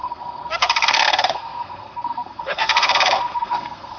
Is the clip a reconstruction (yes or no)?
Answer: yes